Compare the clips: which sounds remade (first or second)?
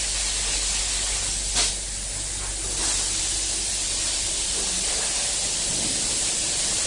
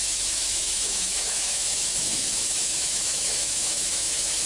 second